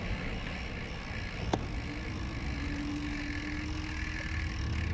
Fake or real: real